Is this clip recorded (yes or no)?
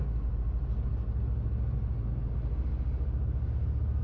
yes